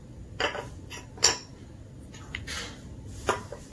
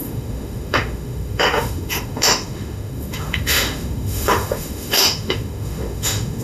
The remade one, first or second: second